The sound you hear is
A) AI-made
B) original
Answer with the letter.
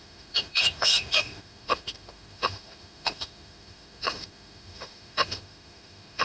A